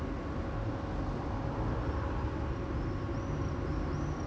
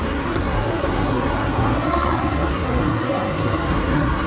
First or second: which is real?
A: first